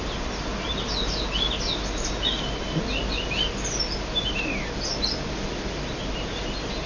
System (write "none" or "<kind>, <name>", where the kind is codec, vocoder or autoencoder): none